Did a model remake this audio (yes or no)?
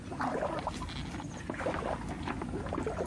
no